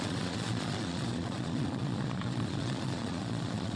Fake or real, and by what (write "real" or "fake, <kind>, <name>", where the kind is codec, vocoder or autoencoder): fake, vocoder, Vocos